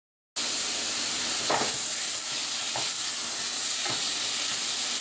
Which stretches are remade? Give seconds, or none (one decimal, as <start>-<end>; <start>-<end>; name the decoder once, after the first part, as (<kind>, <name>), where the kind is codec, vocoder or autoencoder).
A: none